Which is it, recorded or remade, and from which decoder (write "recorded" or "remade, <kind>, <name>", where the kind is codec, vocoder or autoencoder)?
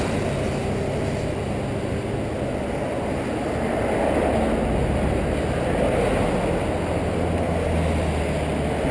recorded